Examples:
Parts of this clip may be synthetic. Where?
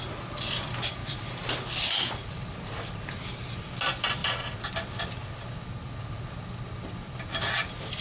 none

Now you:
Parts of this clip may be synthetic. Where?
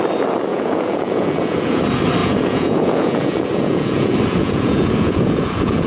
0.5-1.8 (vocoder, Vocos); 2.2-5.9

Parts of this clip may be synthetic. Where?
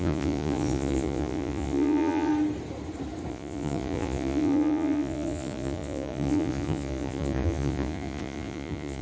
0.0-2.3 (vocoder, Vocos); 3.3-9.0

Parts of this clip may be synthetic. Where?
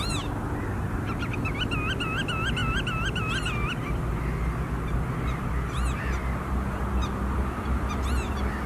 none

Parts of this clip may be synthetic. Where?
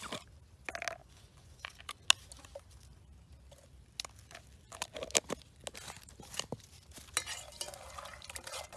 1.0-1.7 (vocoder, Vocos)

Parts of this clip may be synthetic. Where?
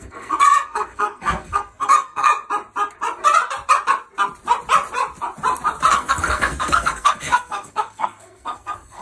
0.0-2.3 (codec, SNAC); 5.9-9.0